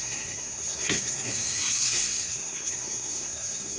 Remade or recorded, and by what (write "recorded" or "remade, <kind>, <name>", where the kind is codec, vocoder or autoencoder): remade, codec, SNAC